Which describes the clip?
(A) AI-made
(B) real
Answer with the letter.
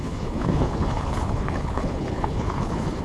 A